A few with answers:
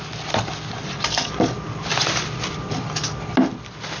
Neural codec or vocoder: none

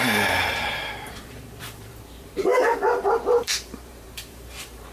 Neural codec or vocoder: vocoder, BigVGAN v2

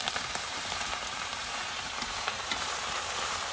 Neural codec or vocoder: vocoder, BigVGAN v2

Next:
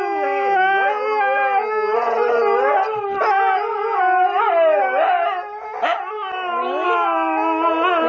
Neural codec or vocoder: none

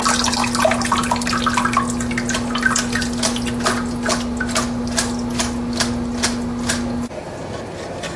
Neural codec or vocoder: none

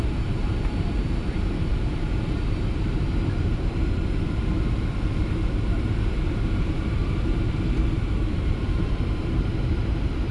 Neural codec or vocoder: vocoder, BigVGAN v2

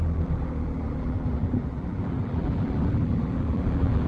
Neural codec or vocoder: vocoder, BigVGAN v2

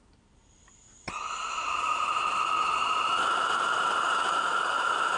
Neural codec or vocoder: vocoder, BigVGAN v2